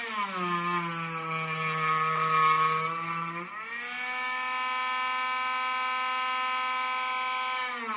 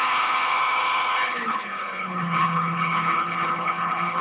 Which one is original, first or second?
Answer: first